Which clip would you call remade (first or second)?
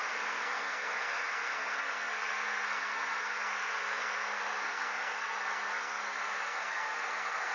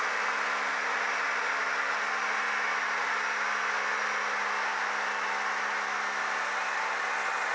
first